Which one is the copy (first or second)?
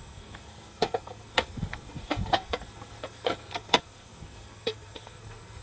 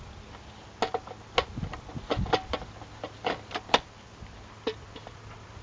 first